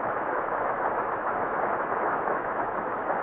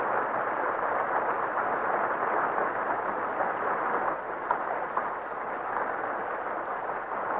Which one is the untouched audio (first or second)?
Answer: second